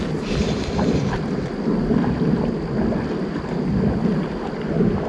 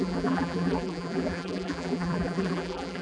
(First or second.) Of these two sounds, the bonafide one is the first